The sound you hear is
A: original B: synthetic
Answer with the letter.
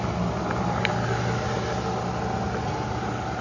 A